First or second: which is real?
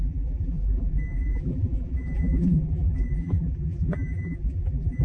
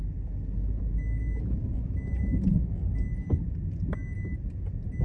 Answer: second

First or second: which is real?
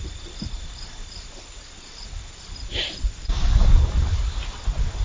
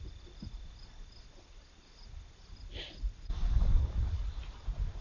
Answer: second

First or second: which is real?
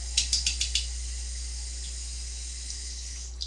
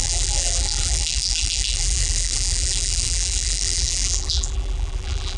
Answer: first